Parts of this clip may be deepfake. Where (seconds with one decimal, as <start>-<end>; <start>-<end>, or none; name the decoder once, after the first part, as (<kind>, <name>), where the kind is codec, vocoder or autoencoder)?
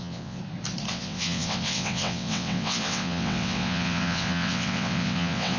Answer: 0.0-0.4 (vocoder, WaveNeXt); 0.9-5.6